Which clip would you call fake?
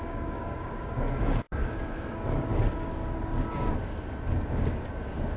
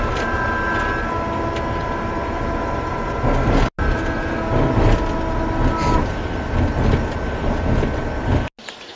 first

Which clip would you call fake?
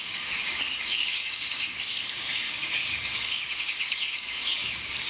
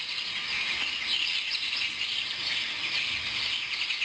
first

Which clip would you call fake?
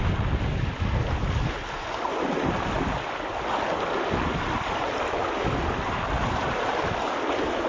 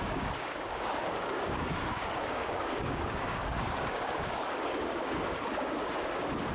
second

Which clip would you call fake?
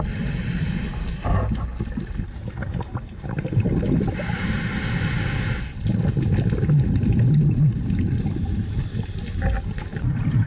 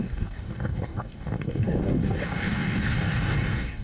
second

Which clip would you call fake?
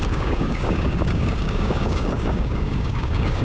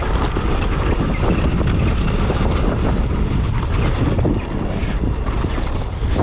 first